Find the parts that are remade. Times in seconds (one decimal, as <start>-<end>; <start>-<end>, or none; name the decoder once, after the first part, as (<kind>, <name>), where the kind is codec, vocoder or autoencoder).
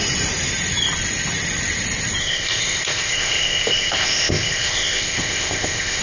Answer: 2.2-6.0 (codec, ZipCodec)